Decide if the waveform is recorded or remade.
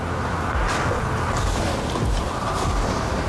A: recorded